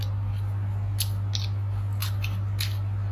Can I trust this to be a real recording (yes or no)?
yes